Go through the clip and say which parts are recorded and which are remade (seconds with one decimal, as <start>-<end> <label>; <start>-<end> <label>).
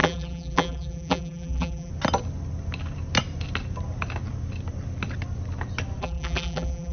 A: 0.0-1.9 remade; 1.9-6.0 recorded; 6.0-6.9 remade